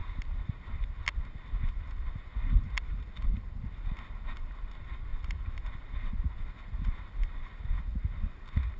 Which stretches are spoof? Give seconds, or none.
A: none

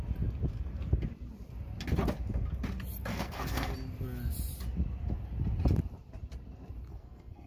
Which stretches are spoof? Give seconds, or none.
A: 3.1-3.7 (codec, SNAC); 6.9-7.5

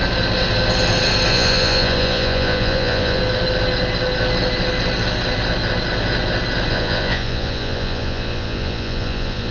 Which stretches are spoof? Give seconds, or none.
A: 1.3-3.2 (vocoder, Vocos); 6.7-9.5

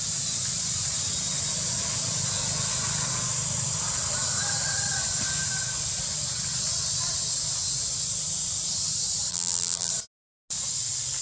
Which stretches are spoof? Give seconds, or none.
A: 9.3-9.9 (vocoder, BigVGAN v2)